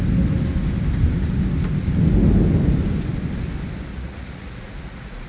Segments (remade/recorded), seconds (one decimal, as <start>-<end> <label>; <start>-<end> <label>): 0.0-3.9 recorded; 3.9-5.3 remade